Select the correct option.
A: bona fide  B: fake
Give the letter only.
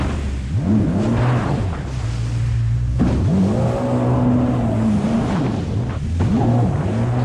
A